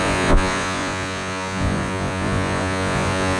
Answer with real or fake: fake